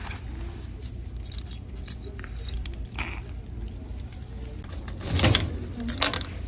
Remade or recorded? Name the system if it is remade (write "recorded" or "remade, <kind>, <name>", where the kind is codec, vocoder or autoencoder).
recorded